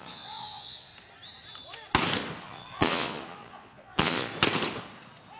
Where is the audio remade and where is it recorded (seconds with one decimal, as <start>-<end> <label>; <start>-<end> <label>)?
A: 0.0-0.9 remade; 0.9-2.4 recorded; 2.4-4.3 remade; 4.3-5.4 recorded